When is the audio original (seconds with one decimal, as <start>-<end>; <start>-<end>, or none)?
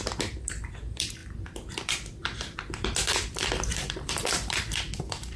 none